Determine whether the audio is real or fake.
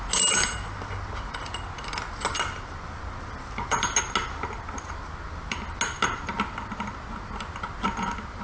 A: real